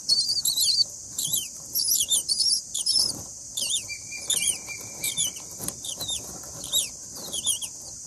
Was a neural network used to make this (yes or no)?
yes